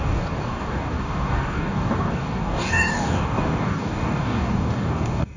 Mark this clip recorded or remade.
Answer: remade